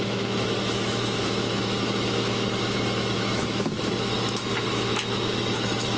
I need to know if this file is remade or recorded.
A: remade